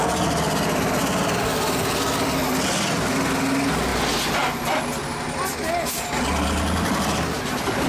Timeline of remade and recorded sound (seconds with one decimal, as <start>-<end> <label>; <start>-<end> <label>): 0.0-7.9 recorded